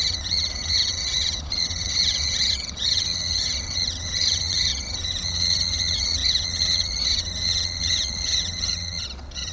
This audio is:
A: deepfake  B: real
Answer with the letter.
A